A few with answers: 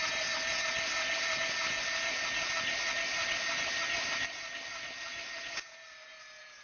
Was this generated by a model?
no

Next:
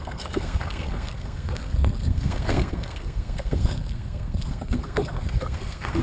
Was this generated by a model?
yes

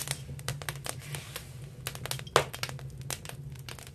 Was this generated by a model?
no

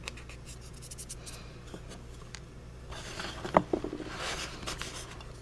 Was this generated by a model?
no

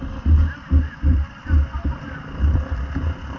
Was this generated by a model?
no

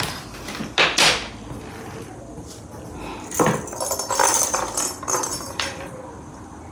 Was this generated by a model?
no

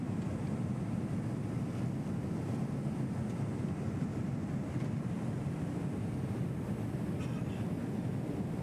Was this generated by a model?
no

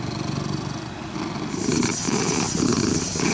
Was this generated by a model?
no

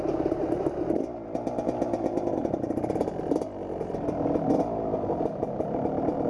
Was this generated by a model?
no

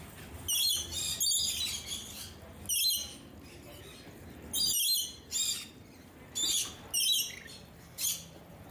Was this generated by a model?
no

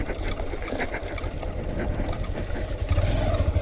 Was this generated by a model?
no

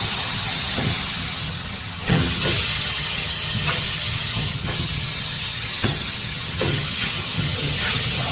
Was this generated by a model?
yes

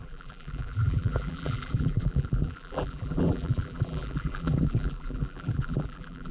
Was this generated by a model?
yes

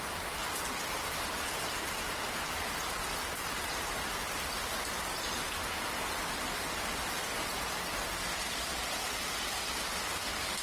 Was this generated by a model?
no